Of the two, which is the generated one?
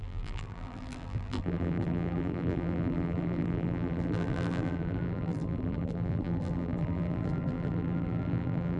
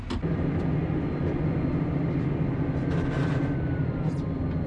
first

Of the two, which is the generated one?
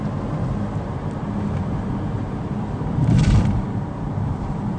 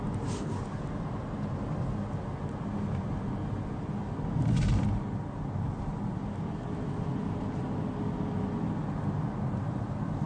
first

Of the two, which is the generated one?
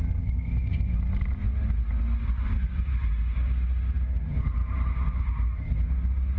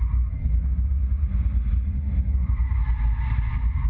second